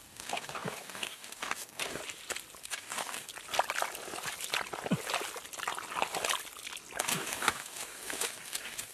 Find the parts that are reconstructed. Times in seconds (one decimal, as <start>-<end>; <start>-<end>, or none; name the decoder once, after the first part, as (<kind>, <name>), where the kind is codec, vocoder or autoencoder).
0.0-2.0 (codec, DAC); 2.6-3.3; 7.0-8.9